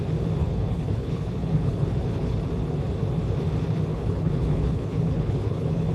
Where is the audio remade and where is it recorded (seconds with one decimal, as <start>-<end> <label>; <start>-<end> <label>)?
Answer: 0.0-0.4 recorded; 0.4-2.4 remade; 2.4-3.9 recorded; 3.9-5.9 remade